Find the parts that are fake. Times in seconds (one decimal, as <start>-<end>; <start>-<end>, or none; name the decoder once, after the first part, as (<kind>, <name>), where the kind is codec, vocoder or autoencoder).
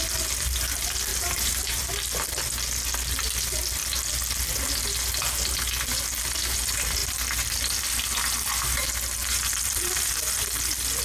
1.1-1.8 (vocoder, BigVGAN v2); 9.2-10.2